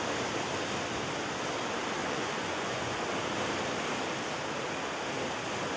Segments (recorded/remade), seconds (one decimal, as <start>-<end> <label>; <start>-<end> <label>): 0.0-2.0 recorded; 2.0-3.0 remade; 3.0-5.8 recorded